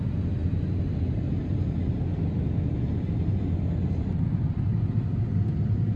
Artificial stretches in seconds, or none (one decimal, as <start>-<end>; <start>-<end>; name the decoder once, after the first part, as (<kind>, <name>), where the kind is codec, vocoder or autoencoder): none